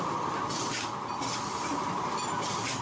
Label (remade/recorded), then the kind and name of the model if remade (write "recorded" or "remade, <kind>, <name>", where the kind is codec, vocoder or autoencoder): recorded